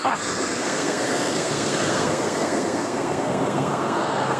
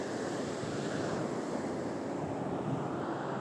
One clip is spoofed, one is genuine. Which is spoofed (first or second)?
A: first